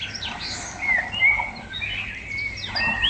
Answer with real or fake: real